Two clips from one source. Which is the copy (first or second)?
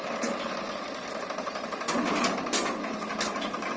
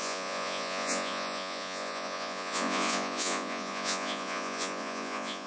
second